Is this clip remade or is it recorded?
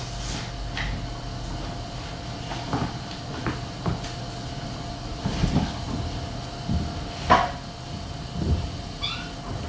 recorded